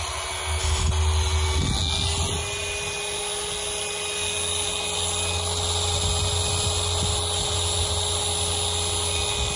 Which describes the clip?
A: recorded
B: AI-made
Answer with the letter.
A